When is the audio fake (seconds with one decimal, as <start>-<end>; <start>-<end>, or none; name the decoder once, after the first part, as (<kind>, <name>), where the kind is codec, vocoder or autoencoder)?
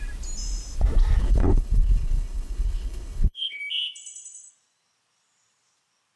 1.2-3.6 (codec, HILCodec)